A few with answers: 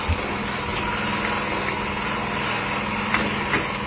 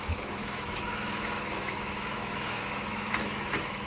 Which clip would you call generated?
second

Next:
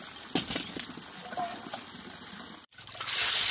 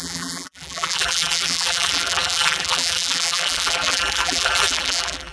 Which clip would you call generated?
second